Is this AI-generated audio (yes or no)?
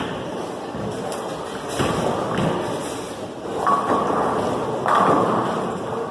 no